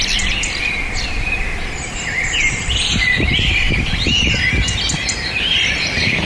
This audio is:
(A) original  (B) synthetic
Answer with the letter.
B